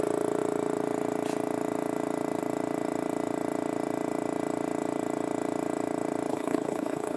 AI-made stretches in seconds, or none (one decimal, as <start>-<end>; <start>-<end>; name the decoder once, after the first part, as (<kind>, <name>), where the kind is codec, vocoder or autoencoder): 6.3-7.2 (codec, HILCodec)